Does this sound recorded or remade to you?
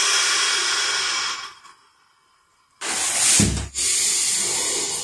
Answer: recorded